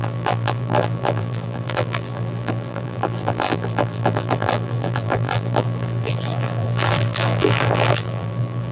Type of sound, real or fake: fake